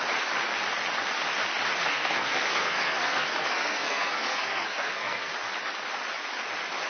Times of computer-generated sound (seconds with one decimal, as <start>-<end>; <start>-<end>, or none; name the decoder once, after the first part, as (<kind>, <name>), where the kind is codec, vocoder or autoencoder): 1.8-5.3 (codec, SNAC)